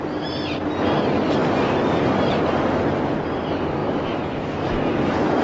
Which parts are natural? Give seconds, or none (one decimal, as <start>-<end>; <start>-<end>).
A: 0.0-3.8